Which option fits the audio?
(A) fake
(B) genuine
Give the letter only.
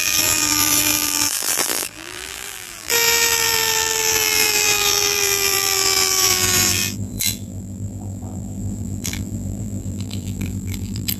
A